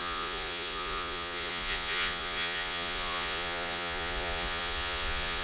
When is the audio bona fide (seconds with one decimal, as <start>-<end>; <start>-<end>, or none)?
none